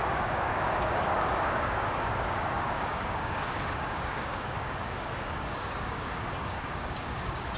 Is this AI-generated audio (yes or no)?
yes